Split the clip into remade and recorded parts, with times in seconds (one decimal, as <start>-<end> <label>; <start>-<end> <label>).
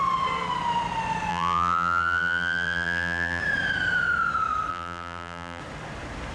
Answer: 0.0-1.3 recorded; 1.3-3.4 remade; 3.4-4.7 recorded; 4.7-5.6 remade; 5.6-6.3 recorded